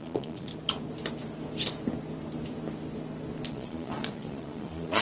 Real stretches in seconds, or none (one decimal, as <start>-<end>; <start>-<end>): 0.5-3.5